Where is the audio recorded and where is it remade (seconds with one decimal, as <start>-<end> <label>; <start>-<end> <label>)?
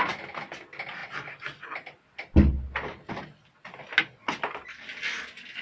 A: 0.0-5.6 recorded